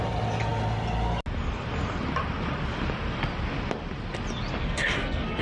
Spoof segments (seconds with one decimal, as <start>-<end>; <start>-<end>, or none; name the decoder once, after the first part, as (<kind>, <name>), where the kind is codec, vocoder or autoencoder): 4.6-5.4 (codec, SNAC)